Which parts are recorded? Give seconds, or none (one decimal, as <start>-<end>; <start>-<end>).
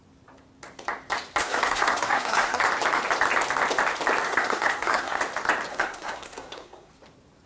0.0-1.4; 2.6-4.3; 5.2-5.7; 6.9-7.5